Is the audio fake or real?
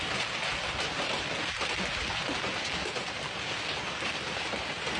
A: real